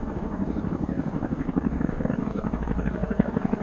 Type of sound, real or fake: fake